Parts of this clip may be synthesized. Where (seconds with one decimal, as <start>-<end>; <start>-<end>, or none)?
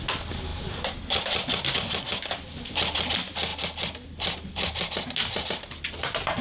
none